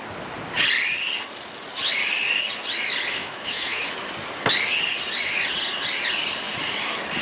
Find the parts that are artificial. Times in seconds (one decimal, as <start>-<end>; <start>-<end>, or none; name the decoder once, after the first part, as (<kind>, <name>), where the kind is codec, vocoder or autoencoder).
3.2-3.9 (autoencoder, DAC-VAE)